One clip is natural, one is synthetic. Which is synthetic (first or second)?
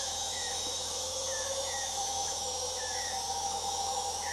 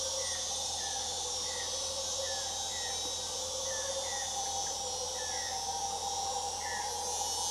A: first